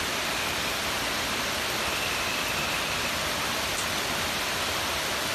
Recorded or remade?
recorded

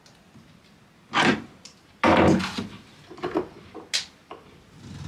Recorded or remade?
recorded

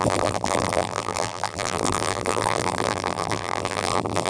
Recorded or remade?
remade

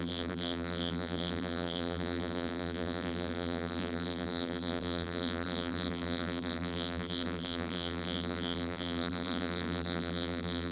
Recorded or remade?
remade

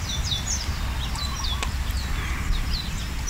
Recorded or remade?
recorded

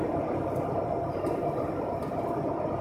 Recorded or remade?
remade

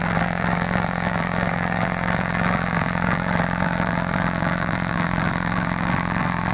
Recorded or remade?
remade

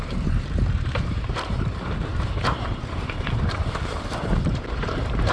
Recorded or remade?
remade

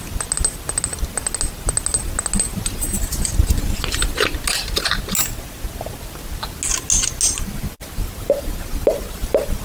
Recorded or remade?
recorded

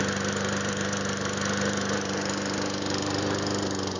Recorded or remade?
remade